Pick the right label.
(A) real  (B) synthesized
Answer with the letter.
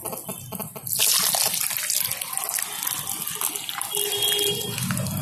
A